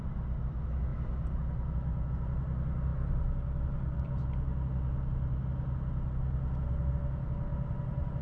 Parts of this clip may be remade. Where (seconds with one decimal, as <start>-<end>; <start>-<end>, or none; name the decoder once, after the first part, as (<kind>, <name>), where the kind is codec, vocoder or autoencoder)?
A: none